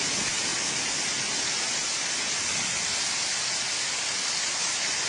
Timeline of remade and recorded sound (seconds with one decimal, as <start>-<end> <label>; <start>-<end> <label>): 0.0-0.5 remade; 0.5-3.6 recorded; 3.6-5.1 remade